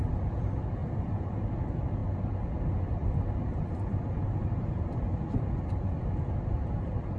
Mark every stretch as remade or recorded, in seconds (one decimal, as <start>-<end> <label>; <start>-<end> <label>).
0.0-0.8 recorded; 0.8-1.4 remade; 1.4-3.5 recorded; 3.5-5.5 remade; 5.5-7.2 recorded